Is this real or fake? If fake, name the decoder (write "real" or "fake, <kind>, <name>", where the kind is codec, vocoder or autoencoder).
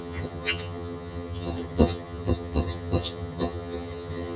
fake, vocoder, HiFi-GAN